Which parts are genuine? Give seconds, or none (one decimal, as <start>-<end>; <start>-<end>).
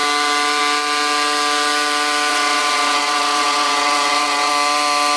0.0-2.3; 4.5-5.2